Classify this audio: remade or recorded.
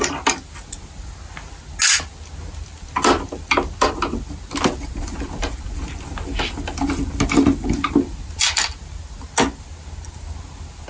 recorded